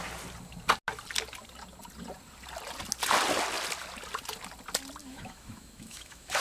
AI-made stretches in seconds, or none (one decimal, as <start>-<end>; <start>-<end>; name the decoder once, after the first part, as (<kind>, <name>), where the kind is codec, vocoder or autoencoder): 5.0-6.4 (autoencoder, DAC-VAE)